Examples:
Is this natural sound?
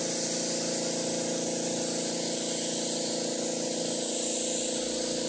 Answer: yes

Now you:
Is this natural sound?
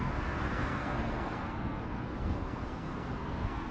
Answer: no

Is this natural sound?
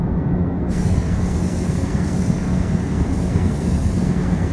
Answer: no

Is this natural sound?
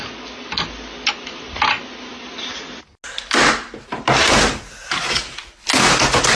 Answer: yes